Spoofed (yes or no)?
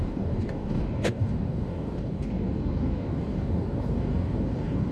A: yes